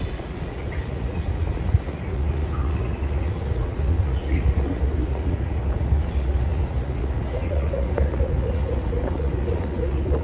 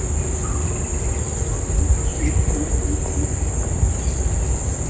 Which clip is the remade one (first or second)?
first